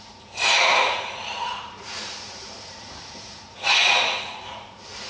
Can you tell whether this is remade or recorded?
remade